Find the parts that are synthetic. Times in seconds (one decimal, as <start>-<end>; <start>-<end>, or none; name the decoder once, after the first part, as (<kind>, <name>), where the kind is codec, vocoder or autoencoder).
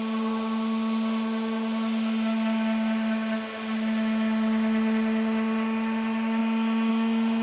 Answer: none